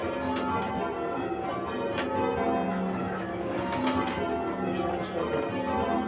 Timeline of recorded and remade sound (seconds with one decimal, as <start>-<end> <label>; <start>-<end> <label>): 0.0-3.0 recorded; 3.0-3.8 remade; 3.8-6.1 recorded